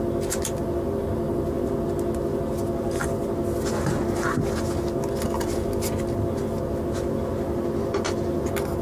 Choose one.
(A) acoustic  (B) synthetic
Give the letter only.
A